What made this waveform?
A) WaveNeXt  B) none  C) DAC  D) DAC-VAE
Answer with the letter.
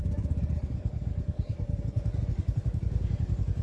C